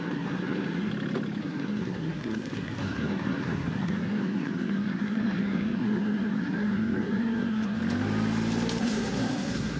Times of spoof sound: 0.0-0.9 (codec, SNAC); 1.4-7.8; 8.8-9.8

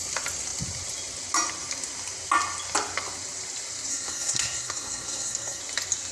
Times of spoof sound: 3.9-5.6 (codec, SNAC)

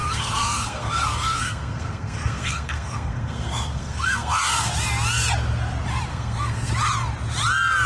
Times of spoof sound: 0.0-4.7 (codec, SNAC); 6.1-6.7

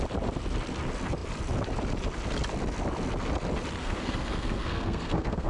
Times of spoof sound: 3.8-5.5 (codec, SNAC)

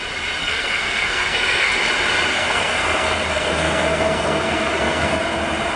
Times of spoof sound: 0.4-1.7 (codec, SNAC); 2.3-5.2

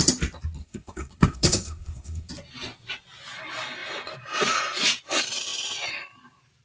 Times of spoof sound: 0.6-2.3 (codec, SNAC)

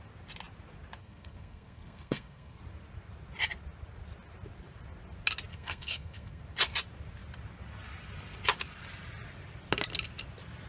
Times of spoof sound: 1.0-2.6 (codec, SNAC); 5.5-6.4

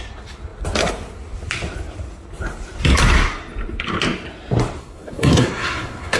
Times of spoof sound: 4.8-6.2 (codec, SNAC)